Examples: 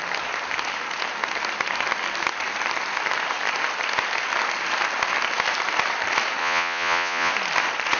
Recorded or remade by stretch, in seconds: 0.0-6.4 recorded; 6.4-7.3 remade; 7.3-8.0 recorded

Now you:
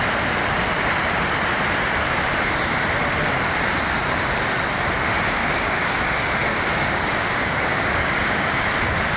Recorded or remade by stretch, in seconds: 0.0-5.4 recorded; 5.4-6.0 remade; 6.0-6.5 recorded; 6.5-8.7 remade; 8.7-9.2 recorded

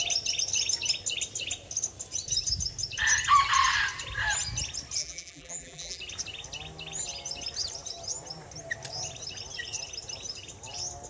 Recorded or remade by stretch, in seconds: 0.0-5.0 recorded; 5.0-6.0 remade; 6.0-11.1 recorded

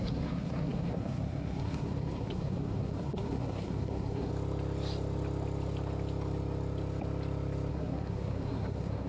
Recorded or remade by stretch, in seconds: 0.0-4.3 remade; 4.3-7.7 recorded; 7.7-9.1 remade